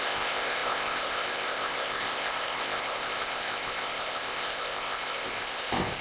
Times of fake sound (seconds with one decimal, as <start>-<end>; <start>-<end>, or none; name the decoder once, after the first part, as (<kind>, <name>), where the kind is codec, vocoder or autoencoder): 0.0-6.0 (codec, ZipCodec)

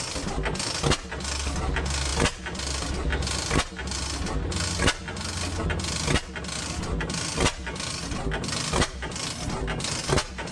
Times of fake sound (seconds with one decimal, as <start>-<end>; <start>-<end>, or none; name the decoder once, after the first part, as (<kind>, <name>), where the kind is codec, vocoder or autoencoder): none

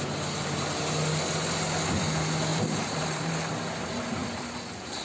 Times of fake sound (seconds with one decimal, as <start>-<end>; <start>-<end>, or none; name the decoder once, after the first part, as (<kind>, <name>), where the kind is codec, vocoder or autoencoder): 2.5-3.3 (vocoder, BigVGAN v2); 4.2-5.0

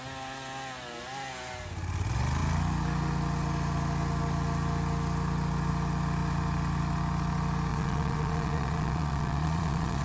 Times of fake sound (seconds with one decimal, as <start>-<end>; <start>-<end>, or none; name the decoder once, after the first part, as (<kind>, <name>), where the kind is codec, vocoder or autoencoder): 7.7-10.0 (vocoder, Vocos)

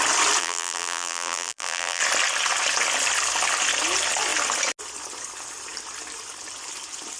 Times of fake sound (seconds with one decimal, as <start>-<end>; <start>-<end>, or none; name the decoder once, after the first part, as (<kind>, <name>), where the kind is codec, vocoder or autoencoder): 0.4-2.0 (vocoder, BigVGAN v2)

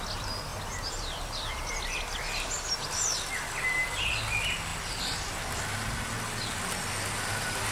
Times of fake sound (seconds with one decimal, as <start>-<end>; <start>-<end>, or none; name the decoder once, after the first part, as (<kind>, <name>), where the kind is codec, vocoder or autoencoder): none

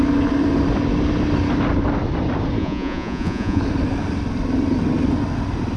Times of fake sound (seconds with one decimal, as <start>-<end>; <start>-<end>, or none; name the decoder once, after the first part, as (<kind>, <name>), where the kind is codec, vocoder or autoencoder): 2.6-3.6 (vocoder, Vocos)